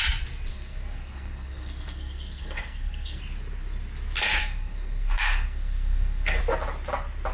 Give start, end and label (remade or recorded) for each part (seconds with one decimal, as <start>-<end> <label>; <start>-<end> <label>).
0.0-0.5 recorded; 0.5-3.2 remade; 3.2-4.4 recorded; 4.4-6.4 remade; 6.4-7.3 recorded